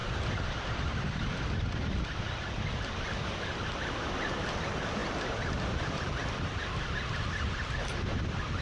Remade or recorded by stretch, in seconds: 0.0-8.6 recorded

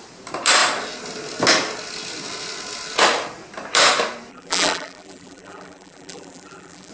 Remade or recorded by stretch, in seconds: 0.0-4.3 recorded; 4.3-6.9 remade

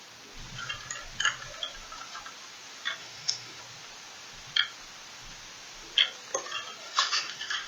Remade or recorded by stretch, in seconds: 0.0-3.0 recorded; 3.0-3.6 remade; 3.6-6.8 recorded; 6.8-7.7 remade

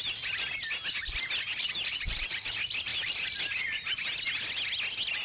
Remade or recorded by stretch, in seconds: 0.0-5.2 recorded

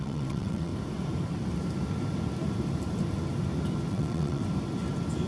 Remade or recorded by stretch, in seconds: 0.0-0.7 remade; 0.7-3.9 recorded; 3.9-4.4 remade; 4.4-5.3 recorded

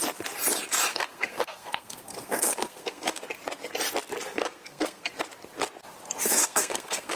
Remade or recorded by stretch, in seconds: 0.0-0.9 recorded; 0.9-3.2 remade; 3.2-4.3 recorded; 4.3-5.1 remade; 5.1-6.2 recorded; 6.2-7.2 remade

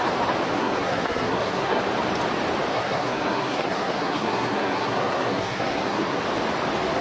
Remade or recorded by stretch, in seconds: 0.0-0.6 recorded; 0.6-1.8 remade; 1.8-2.7 recorded; 2.7-6.2 remade; 6.2-7.0 recorded

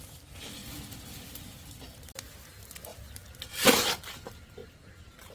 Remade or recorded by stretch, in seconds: 0.0-0.6 recorded; 0.6-1.5 remade; 1.5-5.3 recorded